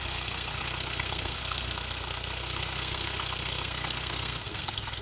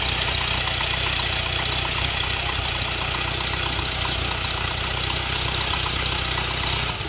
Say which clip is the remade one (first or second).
first